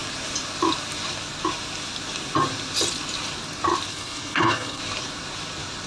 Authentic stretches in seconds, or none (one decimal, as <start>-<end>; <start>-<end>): 0.0-3.9; 4.8-5.9